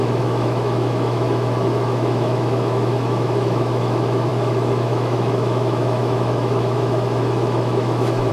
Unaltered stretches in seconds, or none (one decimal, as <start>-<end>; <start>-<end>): none